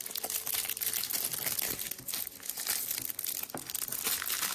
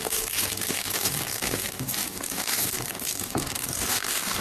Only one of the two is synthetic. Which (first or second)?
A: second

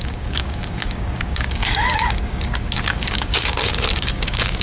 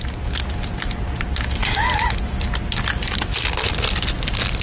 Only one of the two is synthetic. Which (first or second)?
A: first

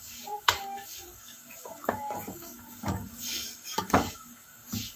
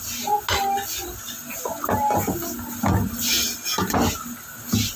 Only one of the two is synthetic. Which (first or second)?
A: first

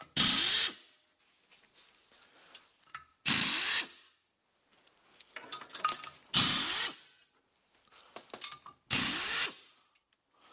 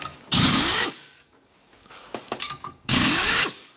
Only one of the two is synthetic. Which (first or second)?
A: second